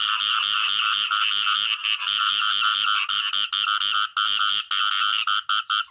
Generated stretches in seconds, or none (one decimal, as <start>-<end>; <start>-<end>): none